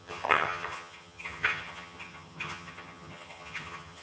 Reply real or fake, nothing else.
fake